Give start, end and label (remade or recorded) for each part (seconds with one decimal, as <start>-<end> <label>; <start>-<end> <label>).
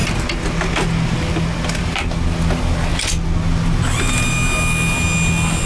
0.0-5.7 recorded